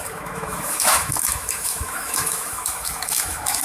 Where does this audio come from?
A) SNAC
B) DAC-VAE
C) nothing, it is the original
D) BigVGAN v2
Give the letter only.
B